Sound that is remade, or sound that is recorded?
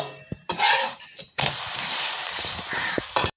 remade